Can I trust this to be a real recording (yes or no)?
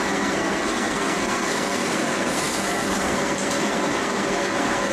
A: no